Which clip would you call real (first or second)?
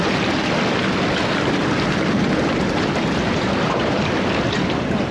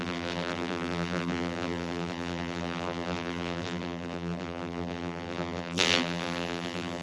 first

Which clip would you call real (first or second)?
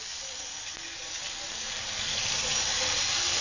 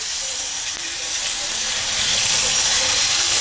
first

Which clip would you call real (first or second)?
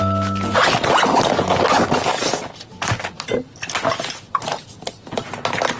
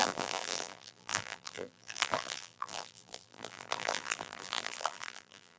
first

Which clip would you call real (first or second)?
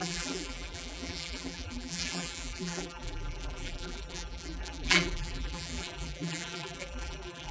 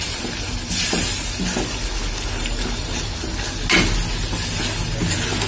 second